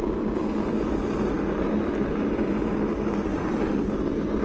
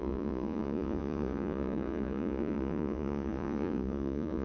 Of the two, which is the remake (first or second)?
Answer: second